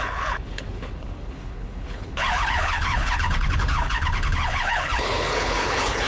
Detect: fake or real fake